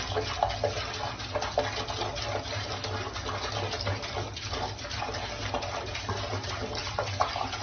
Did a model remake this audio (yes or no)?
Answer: no